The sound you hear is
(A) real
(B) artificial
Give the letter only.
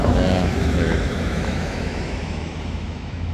B